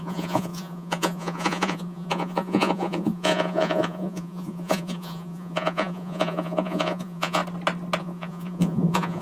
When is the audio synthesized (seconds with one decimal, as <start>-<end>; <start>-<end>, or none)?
0.0-7.4; 8.0-9.2